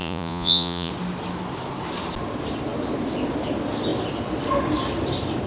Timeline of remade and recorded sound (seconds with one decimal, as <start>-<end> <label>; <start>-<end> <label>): 0.0-0.9 remade; 0.9-5.5 recorded